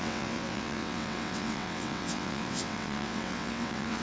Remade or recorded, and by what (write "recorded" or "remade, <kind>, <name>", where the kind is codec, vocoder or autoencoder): remade, vocoder, WaveNeXt